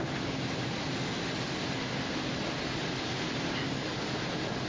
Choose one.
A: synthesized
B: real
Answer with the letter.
B